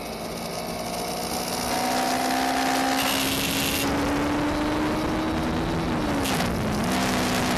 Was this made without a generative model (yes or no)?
yes